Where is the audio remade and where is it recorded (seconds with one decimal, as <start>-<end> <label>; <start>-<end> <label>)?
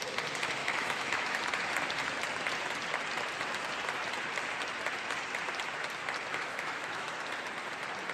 0.0-0.6 recorded; 0.6-1.4 remade; 1.4-6.3 recorded; 6.3-7.1 remade; 7.1-8.1 recorded